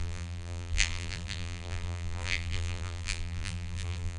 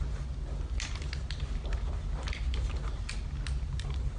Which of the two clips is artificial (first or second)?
first